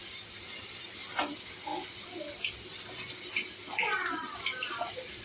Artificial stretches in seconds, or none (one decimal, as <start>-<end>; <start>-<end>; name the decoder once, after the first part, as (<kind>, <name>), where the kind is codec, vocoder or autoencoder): 0.0-1.7 (vocoder, BigVGAN v2); 4.8-5.2